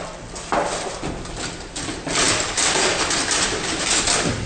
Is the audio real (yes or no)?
yes